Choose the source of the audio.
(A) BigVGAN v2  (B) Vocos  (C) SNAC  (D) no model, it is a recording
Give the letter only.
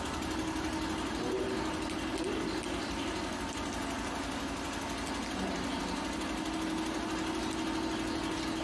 D